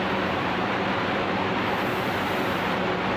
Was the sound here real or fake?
fake